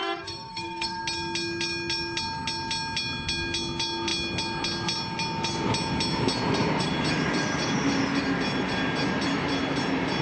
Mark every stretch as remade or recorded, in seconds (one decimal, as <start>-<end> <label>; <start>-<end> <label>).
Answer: 0.0-1.0 remade; 1.0-10.2 recorded